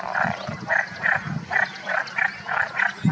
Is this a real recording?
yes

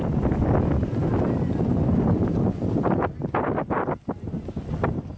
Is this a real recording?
yes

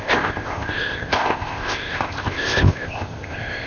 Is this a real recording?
no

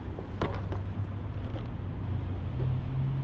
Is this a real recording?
yes